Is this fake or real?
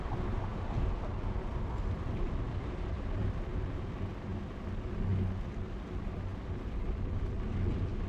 real